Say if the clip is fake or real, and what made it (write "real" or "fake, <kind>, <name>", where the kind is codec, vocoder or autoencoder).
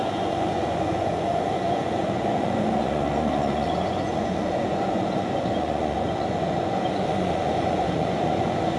fake, vocoder, Vocos